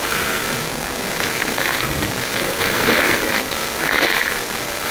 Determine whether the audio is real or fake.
fake